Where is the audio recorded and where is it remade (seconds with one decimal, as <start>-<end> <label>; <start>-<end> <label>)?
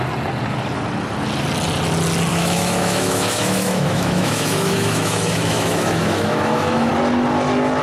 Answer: 0.0-2.3 recorded; 2.3-6.9 remade; 6.9-7.8 recorded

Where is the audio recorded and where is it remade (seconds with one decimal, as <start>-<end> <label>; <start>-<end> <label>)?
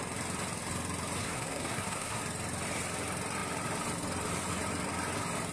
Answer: 0.0-1.2 recorded; 1.2-2.2 remade; 2.2-5.5 recorded